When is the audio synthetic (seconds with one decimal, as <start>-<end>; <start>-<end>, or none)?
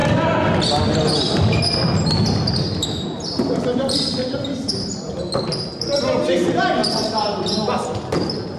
2.8-5.1; 6.8-7.5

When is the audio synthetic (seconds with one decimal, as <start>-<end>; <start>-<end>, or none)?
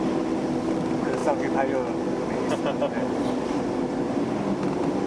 none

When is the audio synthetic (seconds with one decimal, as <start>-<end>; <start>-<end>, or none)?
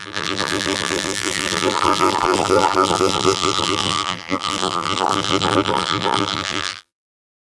0.0-7.4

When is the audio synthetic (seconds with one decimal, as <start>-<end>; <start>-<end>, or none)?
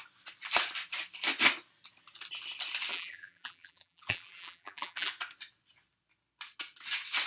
2.9-5.1